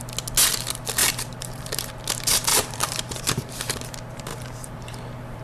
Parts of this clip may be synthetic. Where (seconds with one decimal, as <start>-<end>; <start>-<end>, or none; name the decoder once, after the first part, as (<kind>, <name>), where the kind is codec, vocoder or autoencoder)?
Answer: 1.0-1.9 (vocoder, BigVGAN v2); 2.5-3.5; 4.3-5.4